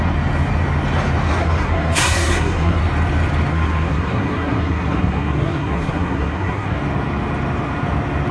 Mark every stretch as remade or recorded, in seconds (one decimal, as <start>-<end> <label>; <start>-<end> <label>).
0.0-1.4 recorded; 1.4-2.8 remade; 2.8-3.5 recorded; 3.5-6.8 remade; 6.8-8.3 recorded